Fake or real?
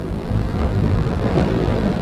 fake